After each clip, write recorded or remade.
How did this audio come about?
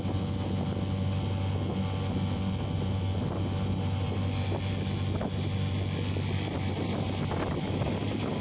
recorded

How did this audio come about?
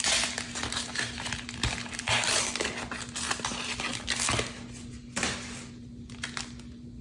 recorded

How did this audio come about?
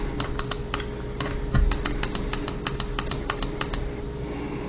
recorded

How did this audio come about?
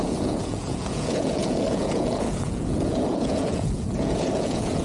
remade